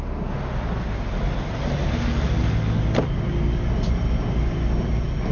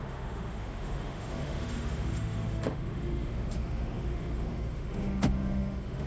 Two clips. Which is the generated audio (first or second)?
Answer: second